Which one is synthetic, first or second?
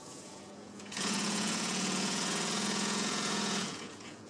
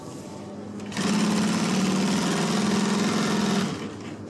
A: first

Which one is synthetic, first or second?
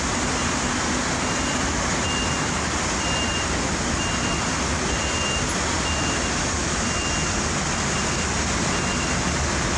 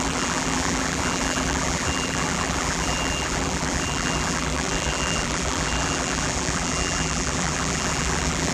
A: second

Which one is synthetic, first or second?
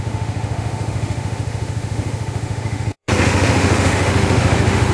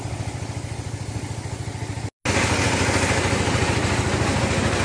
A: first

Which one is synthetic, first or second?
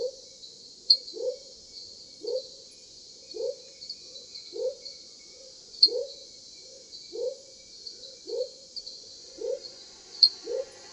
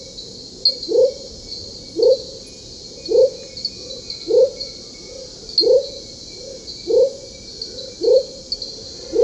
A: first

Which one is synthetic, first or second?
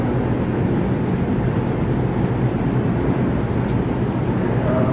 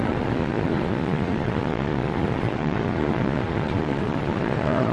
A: second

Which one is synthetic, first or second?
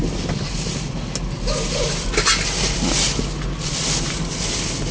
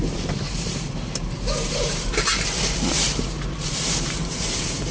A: second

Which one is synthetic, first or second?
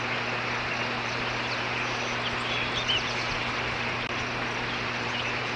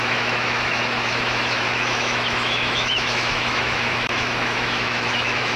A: second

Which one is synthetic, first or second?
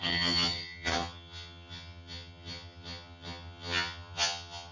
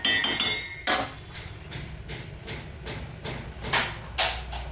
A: first